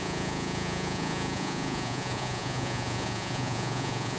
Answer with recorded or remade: remade